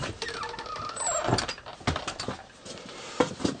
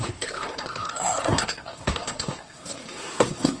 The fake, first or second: second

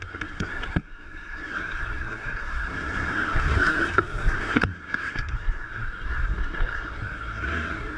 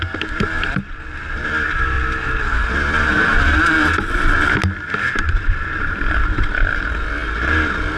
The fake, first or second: first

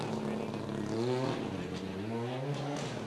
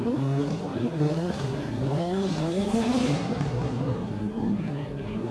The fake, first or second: second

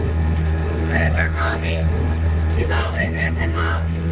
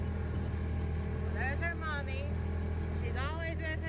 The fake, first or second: first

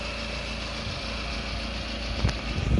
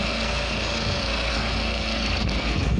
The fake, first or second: second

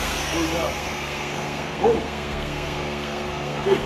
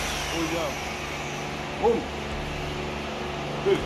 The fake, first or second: first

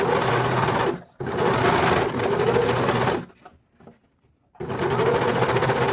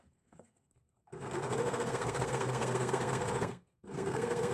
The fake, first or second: second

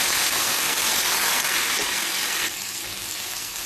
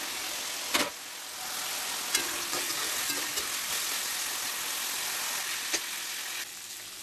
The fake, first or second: first